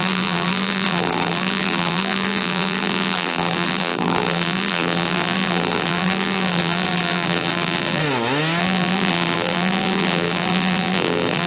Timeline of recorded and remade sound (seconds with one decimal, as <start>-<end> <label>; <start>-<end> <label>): 0.0-8.0 remade; 8.0-8.6 recorded; 8.6-11.5 remade